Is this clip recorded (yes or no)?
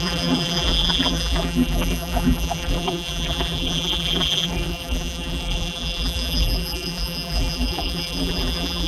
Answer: no